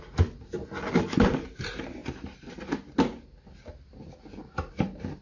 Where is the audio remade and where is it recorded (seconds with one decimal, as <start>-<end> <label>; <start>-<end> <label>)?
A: 0.0-5.2 recorded